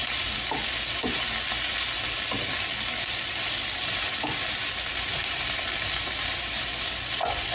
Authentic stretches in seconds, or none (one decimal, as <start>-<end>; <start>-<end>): 0.0-3.0